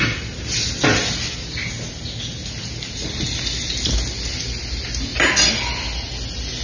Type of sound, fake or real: real